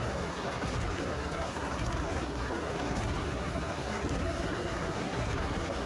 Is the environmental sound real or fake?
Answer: fake